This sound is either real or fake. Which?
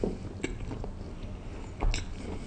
real